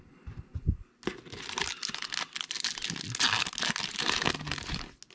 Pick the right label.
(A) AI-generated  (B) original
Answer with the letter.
B